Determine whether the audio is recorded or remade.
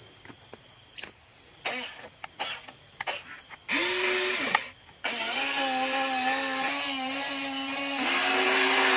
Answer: recorded